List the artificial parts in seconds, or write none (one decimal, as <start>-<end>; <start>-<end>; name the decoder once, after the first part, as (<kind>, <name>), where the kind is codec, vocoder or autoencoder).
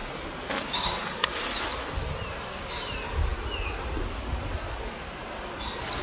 none